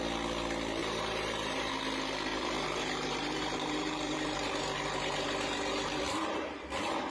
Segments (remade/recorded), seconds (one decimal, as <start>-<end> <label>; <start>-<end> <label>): 0.0-0.8 recorded; 0.8-1.7 remade; 1.7-2.3 recorded; 2.3-6.6 remade; 6.6-7.1 recorded